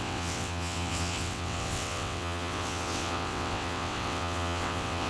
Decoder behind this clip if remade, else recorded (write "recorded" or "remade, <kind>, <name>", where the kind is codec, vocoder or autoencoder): remade, vocoder, WaveNeXt